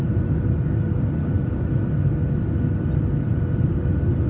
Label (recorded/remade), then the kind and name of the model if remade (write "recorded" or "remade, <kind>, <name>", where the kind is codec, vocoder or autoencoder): recorded